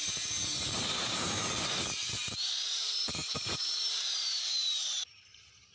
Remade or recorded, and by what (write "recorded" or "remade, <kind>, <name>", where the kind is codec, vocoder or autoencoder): remade, vocoder, BigVGAN v2